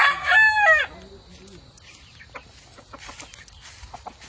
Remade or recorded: recorded